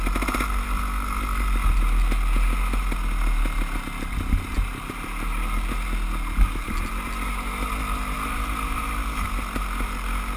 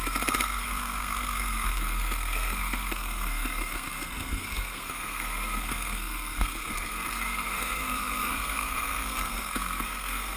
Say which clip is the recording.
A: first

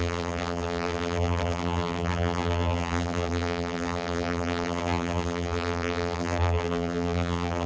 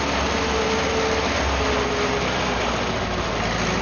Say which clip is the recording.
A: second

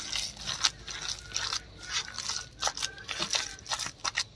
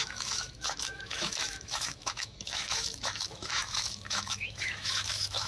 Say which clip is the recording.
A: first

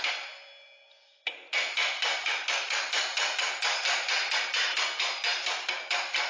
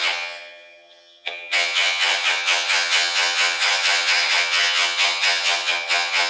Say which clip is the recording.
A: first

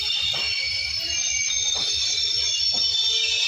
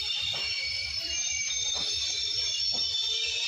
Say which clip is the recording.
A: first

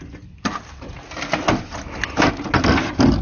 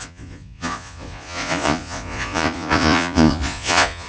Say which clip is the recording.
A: first